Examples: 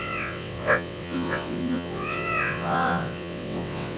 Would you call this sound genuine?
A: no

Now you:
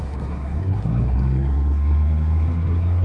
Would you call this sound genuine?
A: no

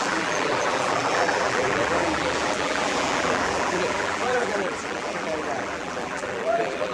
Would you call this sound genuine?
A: no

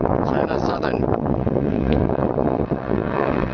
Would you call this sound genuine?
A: no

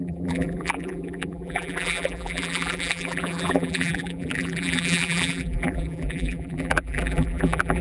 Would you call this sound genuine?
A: no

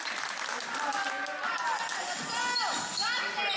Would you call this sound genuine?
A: yes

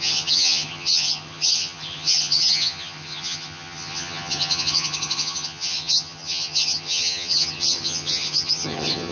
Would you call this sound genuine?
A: no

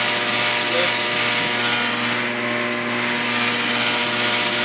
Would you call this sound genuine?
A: yes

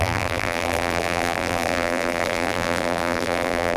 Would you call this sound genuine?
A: no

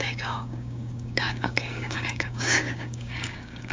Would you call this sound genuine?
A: no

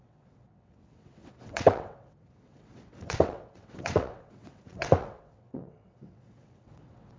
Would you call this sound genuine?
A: no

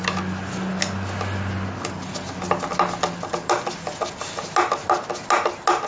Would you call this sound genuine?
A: yes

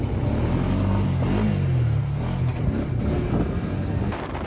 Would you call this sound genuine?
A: yes